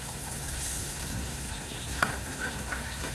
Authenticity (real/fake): fake